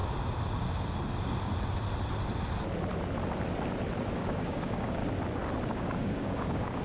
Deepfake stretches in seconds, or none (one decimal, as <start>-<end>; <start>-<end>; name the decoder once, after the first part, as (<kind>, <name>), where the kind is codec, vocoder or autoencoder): 4.1-5.0 (codec, DAC); 5.7-6.8